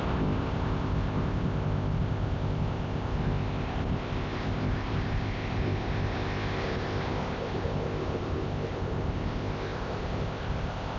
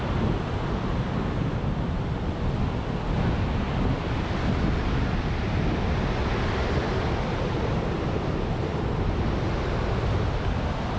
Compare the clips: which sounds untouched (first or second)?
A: second